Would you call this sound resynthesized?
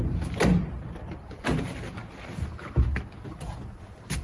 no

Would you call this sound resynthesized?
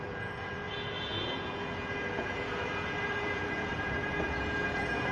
yes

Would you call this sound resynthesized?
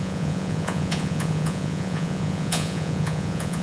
yes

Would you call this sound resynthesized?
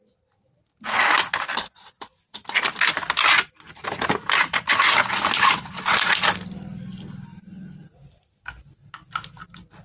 no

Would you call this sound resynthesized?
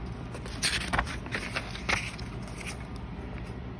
no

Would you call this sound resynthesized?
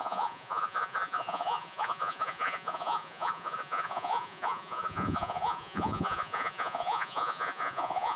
yes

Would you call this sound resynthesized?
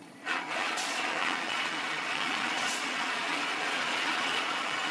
yes